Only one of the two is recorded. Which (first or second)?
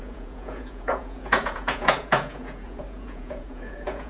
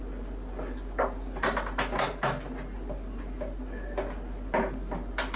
second